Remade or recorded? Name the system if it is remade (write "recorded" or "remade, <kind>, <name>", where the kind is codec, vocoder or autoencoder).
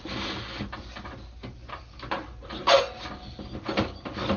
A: recorded